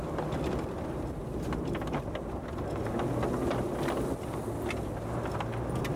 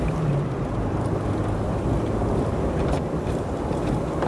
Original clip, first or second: first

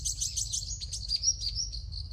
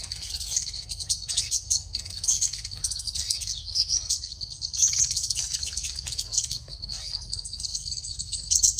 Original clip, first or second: first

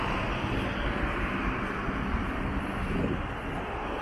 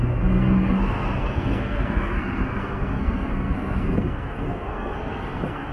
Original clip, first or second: first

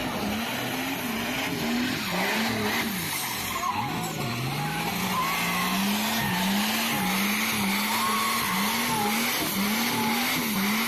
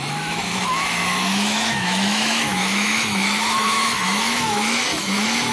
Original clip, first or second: first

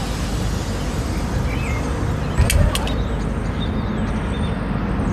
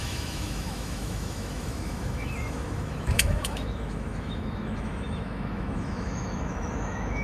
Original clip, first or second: first